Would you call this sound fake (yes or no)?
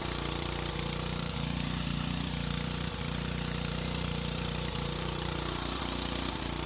yes